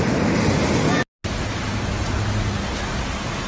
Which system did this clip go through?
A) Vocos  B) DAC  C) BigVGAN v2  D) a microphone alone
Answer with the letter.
D